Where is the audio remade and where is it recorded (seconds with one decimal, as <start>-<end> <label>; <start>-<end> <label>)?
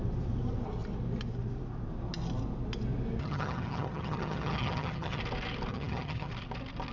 0.0-3.2 recorded; 3.2-5.2 remade; 5.2-5.7 recorded; 5.7-6.3 remade; 6.3-6.9 recorded